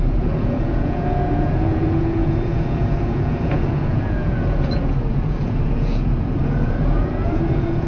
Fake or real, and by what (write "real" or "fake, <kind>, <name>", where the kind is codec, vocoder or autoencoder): fake, vocoder, Vocos